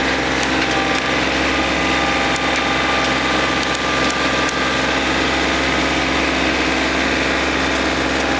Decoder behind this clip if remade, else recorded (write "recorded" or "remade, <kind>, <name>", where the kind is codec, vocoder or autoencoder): recorded